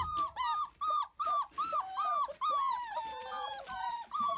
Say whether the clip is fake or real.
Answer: fake